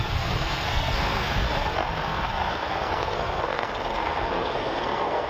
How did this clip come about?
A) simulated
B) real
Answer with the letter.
A